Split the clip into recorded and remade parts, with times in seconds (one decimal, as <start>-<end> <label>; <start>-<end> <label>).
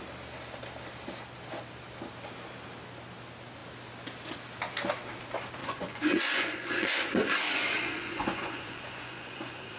0.0-5.6 recorded; 5.6-9.8 remade